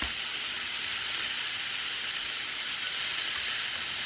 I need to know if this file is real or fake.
real